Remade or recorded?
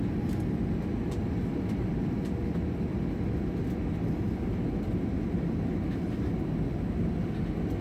recorded